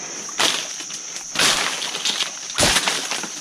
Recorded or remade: recorded